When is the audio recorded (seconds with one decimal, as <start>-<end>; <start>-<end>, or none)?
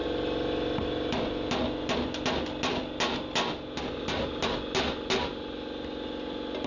0.0-3.8; 4.4-6.7